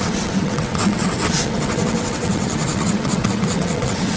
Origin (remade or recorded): remade